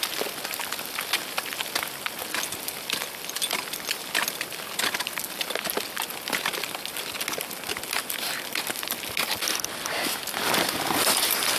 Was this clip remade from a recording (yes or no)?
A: no